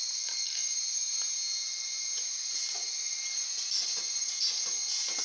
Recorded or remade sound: recorded